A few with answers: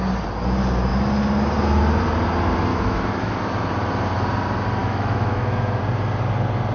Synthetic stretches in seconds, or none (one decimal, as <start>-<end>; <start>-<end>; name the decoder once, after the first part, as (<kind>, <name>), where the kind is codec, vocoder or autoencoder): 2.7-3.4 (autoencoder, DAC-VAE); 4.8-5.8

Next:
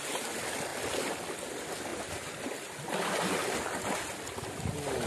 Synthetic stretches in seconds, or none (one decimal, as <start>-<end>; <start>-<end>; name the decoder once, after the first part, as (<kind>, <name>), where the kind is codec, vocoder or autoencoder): none

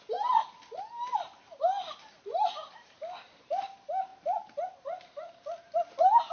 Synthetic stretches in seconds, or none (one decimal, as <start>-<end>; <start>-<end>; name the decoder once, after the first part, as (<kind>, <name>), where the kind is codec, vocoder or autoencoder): none

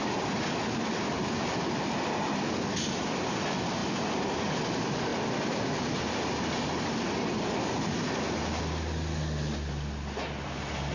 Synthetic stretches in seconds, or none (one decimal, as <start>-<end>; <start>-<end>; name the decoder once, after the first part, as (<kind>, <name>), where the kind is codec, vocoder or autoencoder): none

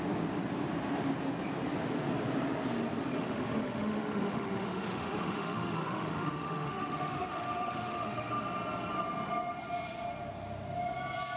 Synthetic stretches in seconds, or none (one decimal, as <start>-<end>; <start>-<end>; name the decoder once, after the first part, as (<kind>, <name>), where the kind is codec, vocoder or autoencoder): 3.1-8.3 (autoencoder, DAC-VAE)

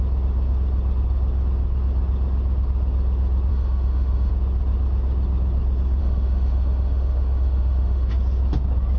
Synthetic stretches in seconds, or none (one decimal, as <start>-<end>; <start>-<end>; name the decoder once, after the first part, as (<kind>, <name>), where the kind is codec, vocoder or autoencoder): 3.5-4.3 (autoencoder, DAC-VAE); 6.0-8.1

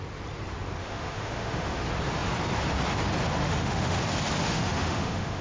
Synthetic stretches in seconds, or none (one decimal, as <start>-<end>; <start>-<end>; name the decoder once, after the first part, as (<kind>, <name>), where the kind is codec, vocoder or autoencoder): 0.8-1.8 (autoencoder, DAC-VAE); 3.4-4.0; 4.4-5.4

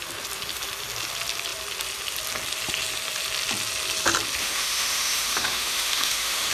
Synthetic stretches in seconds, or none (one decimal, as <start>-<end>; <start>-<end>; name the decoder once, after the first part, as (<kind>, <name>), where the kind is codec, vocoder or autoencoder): 4.4-6.5 (autoencoder, DAC-VAE)